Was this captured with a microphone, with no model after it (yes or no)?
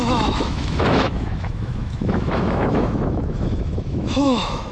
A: no